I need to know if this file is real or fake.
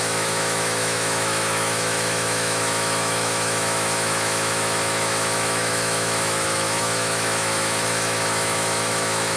fake